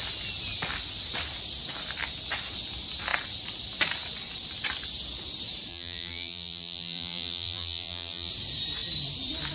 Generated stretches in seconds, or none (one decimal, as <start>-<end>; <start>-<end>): 5.7-8.3